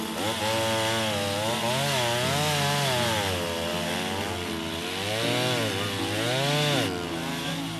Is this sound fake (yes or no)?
no